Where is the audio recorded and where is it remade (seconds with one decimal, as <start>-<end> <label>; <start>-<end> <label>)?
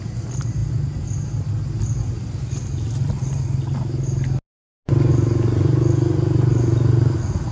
0.0-7.5 recorded